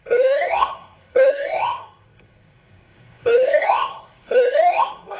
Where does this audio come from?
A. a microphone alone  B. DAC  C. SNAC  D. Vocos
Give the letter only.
C